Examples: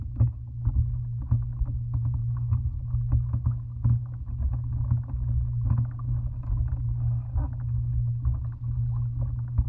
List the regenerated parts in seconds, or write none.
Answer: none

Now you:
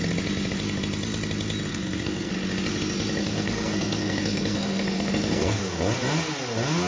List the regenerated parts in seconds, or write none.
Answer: 1.7-2.3; 3.2-5.6